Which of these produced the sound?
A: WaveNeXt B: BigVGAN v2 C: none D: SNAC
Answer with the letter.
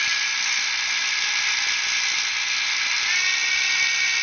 C